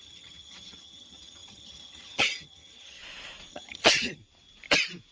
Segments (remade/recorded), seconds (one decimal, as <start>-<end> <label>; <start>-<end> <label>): 0.0-3.0 remade; 3.0-3.5 recorded; 3.5-4.2 remade; 4.2-5.1 recorded